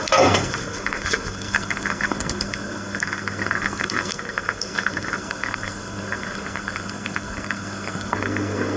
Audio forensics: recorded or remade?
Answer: remade